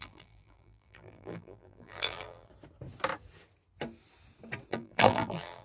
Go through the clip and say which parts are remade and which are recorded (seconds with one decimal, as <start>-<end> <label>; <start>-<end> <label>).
0.0-2.5 remade; 2.5-4.7 recorded; 4.7-5.6 remade